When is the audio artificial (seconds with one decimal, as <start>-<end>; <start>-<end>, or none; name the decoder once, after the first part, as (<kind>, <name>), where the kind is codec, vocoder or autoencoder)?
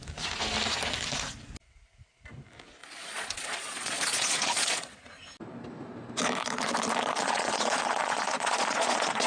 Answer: 2.8-5.1 (vocoder, Vocos); 7.2-9.3